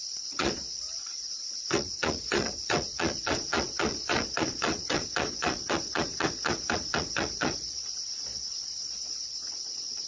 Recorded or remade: remade